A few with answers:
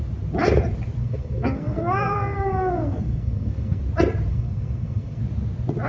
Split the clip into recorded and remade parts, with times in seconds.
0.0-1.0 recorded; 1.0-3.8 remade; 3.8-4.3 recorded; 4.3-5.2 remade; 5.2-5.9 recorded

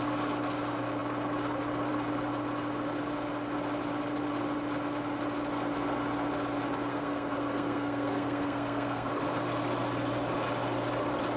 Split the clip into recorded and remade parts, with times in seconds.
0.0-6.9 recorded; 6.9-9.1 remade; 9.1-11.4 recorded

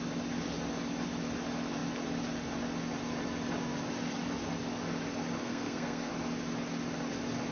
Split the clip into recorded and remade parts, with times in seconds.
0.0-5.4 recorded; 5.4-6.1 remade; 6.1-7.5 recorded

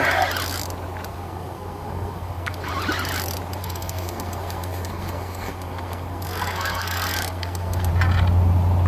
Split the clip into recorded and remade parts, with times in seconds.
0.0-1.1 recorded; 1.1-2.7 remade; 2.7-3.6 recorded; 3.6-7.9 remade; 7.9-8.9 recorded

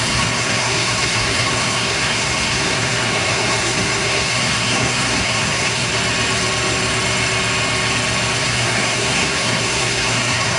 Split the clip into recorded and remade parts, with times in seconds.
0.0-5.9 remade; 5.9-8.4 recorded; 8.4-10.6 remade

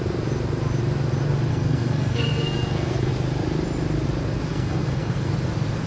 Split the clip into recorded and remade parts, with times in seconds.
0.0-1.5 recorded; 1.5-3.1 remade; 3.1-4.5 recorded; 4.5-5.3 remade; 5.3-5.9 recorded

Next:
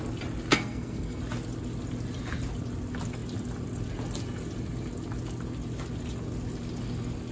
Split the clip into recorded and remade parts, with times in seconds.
0.0-0.5 recorded; 0.5-1.2 remade; 1.2-7.3 recorded

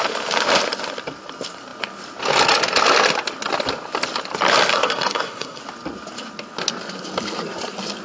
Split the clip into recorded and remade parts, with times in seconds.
0.0-4.7 recorded; 4.7-5.6 remade; 5.6-8.0 recorded